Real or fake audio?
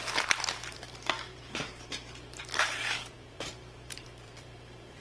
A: fake